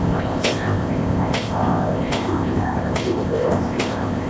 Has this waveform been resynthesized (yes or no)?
yes